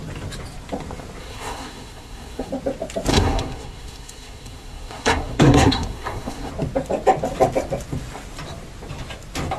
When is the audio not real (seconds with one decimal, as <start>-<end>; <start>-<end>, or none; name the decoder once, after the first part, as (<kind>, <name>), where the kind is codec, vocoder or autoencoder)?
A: 1.2-2.5 (codec, SNAC); 3.1-6.5